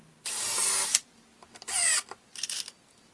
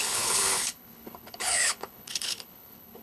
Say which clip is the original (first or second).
first